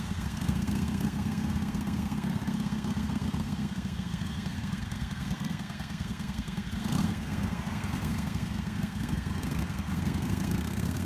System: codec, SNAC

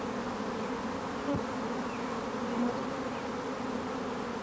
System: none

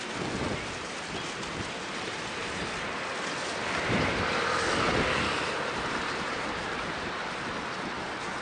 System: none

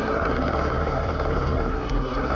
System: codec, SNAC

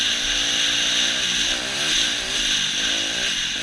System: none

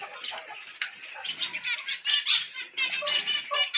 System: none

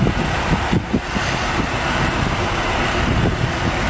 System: none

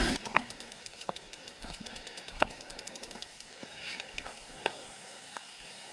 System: codec, SNAC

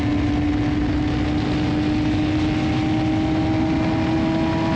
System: none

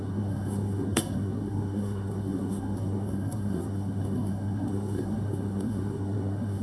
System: codec, SNAC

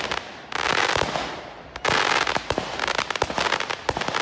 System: none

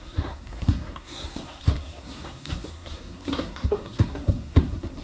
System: codec, SNAC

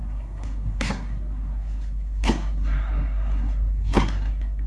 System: codec, SNAC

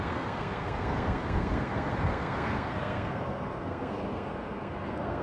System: codec, SNAC